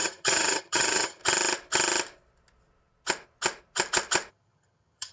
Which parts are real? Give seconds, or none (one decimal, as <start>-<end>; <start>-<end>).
1.2-4.3